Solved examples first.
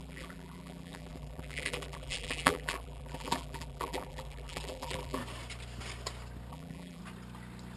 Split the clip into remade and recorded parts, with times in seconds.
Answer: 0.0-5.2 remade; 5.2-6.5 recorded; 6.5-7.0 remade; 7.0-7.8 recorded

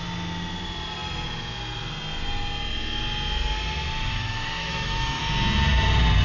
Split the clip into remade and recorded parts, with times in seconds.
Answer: 0.0-4.1 recorded; 4.1-5.2 remade; 5.2-6.2 recorded

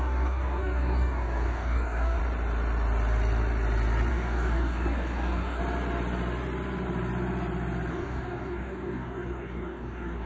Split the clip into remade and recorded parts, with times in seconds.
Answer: 0.0-2.2 remade; 2.2-4.1 recorded; 4.1-5.6 remade; 5.6-7.9 recorded; 7.9-10.3 remade

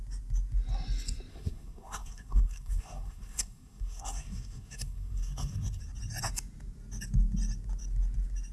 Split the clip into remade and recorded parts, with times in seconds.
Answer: 0.0-1.3 recorded; 1.3-5.8 remade; 5.8-8.5 recorded

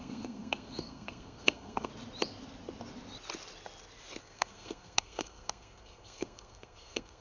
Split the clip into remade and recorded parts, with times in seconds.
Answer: 0.0-1.9 remade; 1.9-4.2 recorded; 4.2-7.2 remade

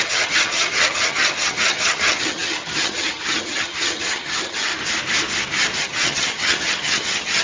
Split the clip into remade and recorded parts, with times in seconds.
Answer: 0.0-4.7 remade; 4.7-5.8 recorded; 5.8-7.4 remade

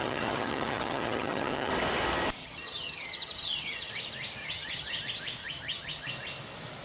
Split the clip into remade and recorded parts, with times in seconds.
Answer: 0.0-1.7 remade; 1.7-2.4 recorded; 2.4-3.9 remade; 3.9-4.4 recorded; 4.4-5.0 remade; 5.0-5.4 recorded; 5.4-6.1 remade; 6.1-6.8 recorded